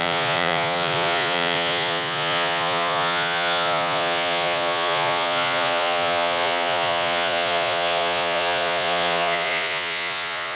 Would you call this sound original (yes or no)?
no